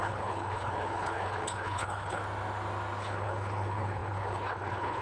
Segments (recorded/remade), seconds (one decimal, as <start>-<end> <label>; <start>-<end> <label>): 0.0-2.2 remade; 2.2-3.0 recorded; 3.0-5.0 remade